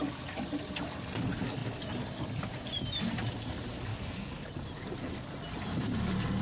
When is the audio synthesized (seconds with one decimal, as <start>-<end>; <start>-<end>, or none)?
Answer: 3.9-4.5